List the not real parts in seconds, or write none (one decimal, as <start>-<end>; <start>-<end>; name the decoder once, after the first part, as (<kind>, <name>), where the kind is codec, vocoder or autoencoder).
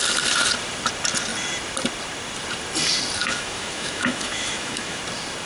3.2-5.0 (autoencoder, DAC-VAE)